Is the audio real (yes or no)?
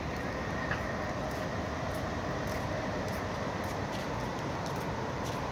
yes